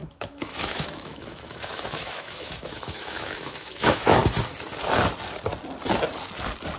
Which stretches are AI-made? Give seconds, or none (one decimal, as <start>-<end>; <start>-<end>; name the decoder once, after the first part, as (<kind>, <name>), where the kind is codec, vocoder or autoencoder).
0.0-4.2 (autoencoder, DAC-VAE)